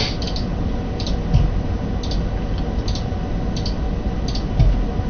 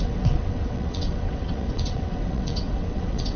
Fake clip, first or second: second